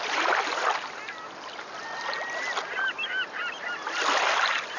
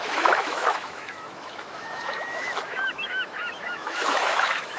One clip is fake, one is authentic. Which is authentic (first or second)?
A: first